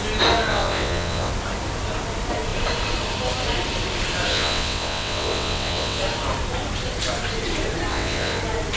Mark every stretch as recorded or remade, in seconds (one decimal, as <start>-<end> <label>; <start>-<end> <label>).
0.0-0.5 recorded; 0.5-1.3 remade; 1.3-4.3 recorded; 4.3-6.0 remade; 6.0-7.9 recorded; 7.9-8.4 remade; 8.4-8.8 recorded